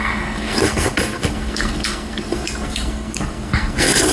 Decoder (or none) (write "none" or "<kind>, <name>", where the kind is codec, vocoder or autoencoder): codec, SNAC